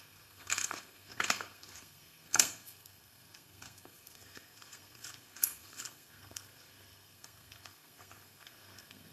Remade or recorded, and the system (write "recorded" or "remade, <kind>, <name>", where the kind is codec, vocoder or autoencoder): remade, codec, SNAC